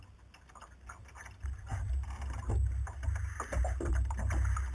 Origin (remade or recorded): recorded